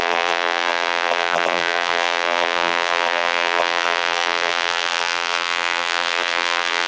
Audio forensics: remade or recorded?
remade